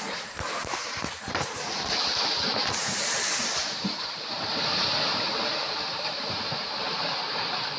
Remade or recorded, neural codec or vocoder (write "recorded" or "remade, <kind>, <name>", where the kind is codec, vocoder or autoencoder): remade, vocoder, BigVGAN v2